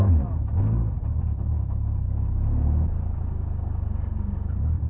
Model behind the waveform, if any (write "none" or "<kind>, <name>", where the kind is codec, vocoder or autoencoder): none